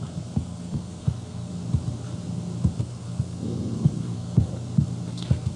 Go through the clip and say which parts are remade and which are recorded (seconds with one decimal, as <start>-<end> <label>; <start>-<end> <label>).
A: 0.0-1.5 remade; 1.5-2.8 recorded; 2.8-4.5 remade; 4.5-5.1 recorded; 5.1-5.6 remade